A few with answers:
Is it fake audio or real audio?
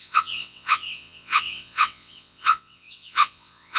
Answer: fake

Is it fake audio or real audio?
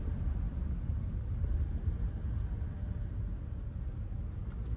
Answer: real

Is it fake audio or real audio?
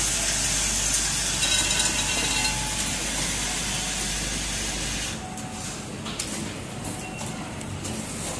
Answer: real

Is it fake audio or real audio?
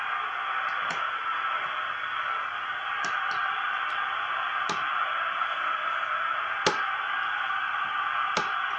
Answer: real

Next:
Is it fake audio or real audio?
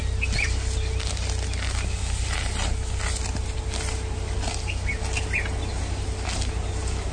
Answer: real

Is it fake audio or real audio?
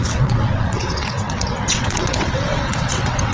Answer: fake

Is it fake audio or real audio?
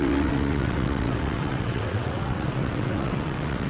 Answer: fake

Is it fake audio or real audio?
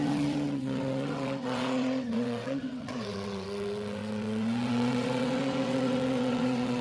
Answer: fake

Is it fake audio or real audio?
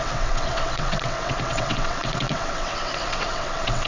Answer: fake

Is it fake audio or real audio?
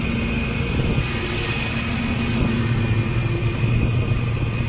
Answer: real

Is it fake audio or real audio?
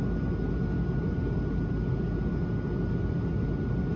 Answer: real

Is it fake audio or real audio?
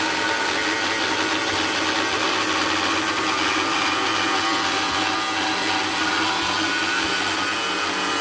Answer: real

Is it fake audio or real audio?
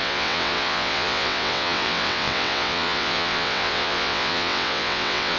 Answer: fake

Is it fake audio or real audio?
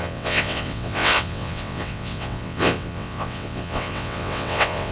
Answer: fake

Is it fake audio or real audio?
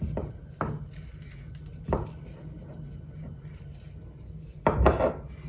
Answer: real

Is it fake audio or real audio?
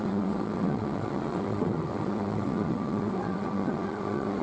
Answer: fake